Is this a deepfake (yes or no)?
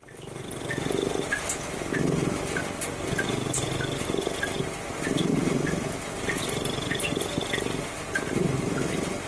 no